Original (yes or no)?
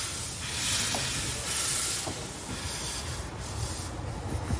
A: yes